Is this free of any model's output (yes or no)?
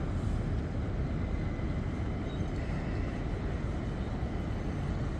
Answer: yes